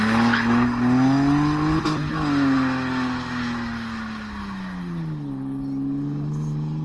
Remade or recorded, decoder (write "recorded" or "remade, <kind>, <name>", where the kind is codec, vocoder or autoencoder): recorded